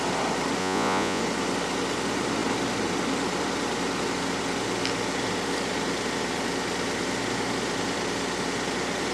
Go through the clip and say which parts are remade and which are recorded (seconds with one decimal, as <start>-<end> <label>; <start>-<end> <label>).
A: 0.0-0.6 recorded; 0.6-1.2 remade; 1.2-9.1 recorded